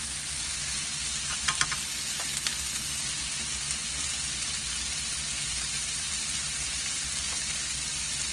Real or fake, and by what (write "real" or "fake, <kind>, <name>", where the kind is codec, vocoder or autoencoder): real